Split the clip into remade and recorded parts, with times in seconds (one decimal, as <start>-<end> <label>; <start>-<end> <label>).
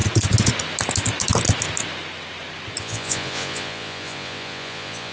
0.0-2.8 recorded; 2.8-5.1 remade